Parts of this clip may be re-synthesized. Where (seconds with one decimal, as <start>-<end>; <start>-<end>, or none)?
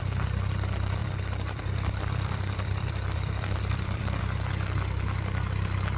1.0-4.2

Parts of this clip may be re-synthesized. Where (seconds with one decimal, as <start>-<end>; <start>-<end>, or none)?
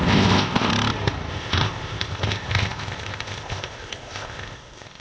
0.0-0.7; 1.3-5.0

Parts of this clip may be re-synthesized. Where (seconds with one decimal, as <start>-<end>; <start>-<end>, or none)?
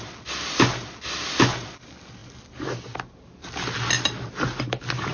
none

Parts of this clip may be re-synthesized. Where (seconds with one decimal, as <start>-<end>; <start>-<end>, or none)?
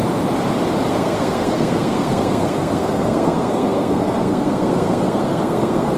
0.9-6.0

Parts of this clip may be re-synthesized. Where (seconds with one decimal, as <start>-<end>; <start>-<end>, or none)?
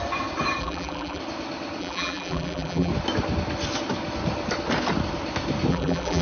0.6-1.2; 1.8-2.9; 5.7-6.2